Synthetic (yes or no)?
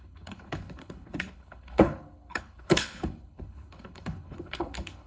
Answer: yes